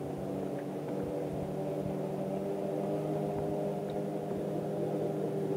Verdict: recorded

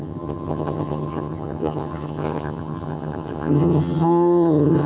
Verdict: remade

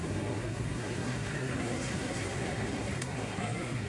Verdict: remade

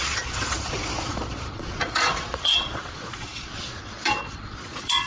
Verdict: remade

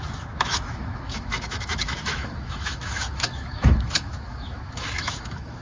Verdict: remade